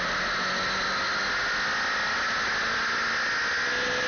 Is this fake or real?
real